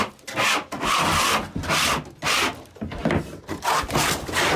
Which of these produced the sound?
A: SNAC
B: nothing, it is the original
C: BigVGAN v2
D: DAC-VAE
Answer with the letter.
B